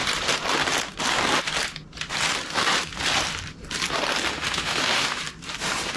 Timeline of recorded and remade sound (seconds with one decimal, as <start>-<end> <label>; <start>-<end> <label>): 0.0-4.3 recorded; 4.3-5.2 remade; 5.2-6.0 recorded

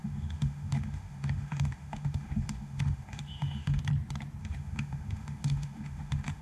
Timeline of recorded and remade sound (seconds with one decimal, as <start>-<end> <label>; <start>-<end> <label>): 0.0-3.8 remade; 3.8-4.4 recorded; 4.4-6.4 remade

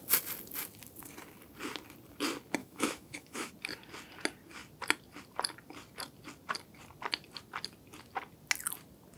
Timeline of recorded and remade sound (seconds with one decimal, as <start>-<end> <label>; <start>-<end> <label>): 0.0-2.6 recorded; 2.6-3.5 remade; 3.5-9.2 recorded

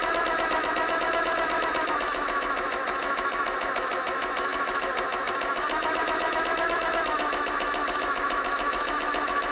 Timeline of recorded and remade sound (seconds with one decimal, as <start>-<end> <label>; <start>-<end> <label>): 0.0-9.5 remade

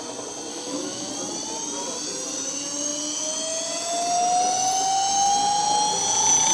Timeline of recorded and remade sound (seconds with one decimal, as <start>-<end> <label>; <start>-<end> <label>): 0.0-0.5 recorded; 0.5-1.1 remade; 1.1-6.5 recorded

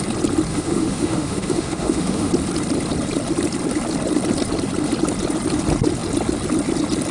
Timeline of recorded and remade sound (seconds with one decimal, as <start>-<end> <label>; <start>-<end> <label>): 0.0-0.5 recorded; 0.5-2.3 remade; 2.3-7.1 recorded